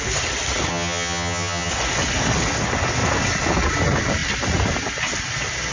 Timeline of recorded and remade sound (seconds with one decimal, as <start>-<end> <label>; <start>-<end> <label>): 0.0-0.7 recorded; 0.7-1.7 remade; 1.7-5.7 recorded